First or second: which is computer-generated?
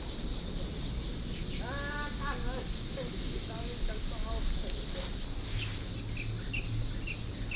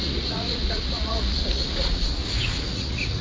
second